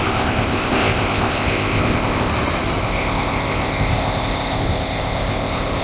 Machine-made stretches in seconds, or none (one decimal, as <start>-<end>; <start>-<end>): 0.0-2.3; 2.8-5.8